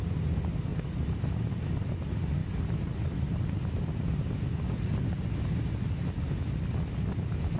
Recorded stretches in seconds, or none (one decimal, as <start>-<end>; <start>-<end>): 0.0-7.6